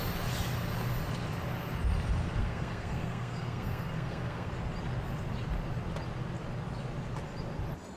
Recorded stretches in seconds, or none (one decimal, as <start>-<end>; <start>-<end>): 0.0-2.4; 4.5-8.0